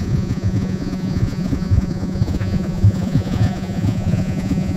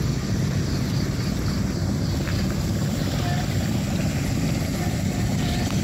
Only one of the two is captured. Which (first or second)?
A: second